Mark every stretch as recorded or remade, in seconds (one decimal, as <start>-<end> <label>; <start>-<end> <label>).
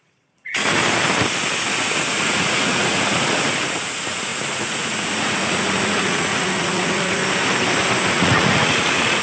0.0-0.8 remade; 0.8-1.6 recorded; 1.6-7.2 remade; 7.2-8.1 recorded; 8.1-9.2 remade